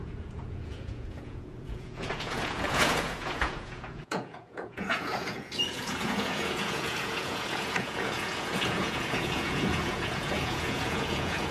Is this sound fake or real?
fake